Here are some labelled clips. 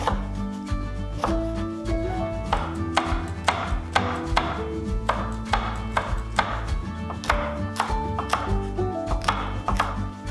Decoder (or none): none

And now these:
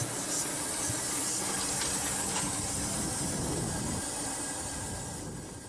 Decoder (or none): none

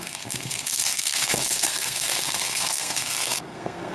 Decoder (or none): codec, SNAC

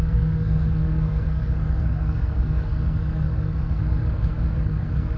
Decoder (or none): codec, SNAC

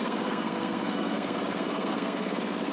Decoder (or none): codec, SNAC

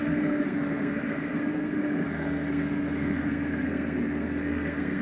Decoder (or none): codec, SNAC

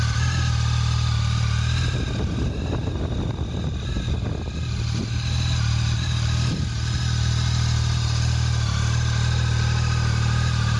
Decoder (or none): none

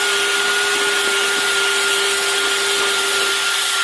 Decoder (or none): none